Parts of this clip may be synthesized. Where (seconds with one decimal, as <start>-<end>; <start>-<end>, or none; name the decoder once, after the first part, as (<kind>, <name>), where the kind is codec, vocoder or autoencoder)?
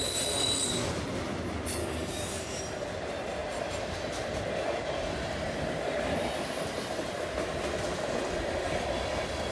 1.8-2.6 (codec, DAC)